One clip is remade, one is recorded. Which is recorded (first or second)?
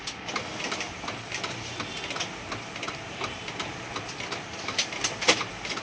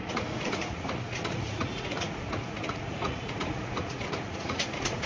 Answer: first